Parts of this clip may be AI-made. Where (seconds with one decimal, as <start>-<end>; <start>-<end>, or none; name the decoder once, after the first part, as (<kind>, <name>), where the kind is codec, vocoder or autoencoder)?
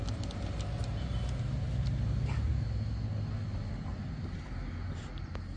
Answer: 0.8-2.5 (vocoder, BigVGAN v2); 3.9-5.1